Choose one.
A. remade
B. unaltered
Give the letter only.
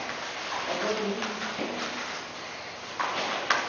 B